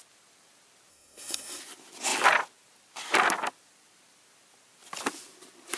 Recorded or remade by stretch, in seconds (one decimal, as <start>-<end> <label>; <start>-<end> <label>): 0.0-0.9 recorded; 0.9-1.6 remade; 1.6-5.8 recorded